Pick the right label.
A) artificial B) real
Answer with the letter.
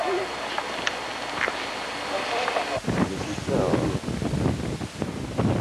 B